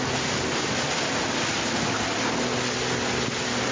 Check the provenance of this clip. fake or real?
real